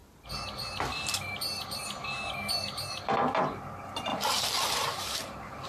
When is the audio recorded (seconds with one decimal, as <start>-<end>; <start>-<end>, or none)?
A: 0.0-4.1

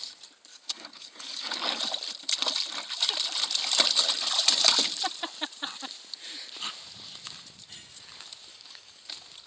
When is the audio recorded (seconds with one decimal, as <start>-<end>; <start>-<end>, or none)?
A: 0.0-0.5; 1.8-8.5; 9.1-9.5

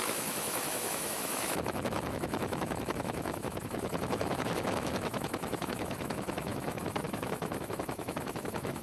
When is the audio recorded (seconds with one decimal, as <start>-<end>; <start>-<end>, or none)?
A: none

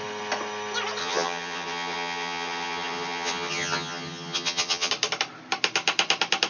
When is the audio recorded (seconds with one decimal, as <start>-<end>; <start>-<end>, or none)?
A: 0.0-1.0; 4.9-6.5

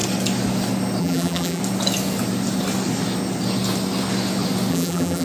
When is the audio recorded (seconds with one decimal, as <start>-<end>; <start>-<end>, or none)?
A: 0.0-1.0; 1.6-4.7

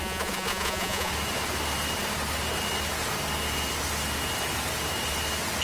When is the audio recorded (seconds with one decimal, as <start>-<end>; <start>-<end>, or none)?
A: 1.1-5.6

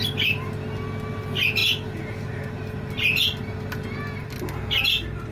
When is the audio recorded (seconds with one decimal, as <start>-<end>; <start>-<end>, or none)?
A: 0.0-5.3

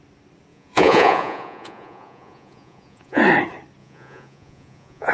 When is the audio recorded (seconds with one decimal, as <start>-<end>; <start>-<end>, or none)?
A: 0.0-0.5; 3.2-3.8